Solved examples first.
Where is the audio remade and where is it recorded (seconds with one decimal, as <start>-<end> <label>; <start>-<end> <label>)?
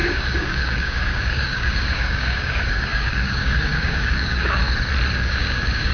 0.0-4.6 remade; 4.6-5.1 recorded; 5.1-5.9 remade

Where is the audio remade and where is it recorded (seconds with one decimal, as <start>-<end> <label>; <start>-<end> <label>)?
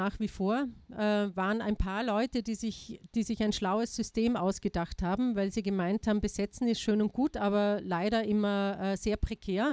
0.0-9.7 recorded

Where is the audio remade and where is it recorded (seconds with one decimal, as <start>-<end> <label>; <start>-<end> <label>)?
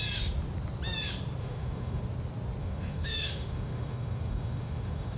0.0-1.4 recorded; 1.4-2.0 remade; 2.0-2.6 recorded; 2.6-5.2 remade